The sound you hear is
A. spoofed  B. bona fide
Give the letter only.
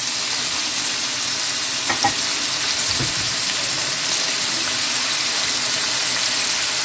B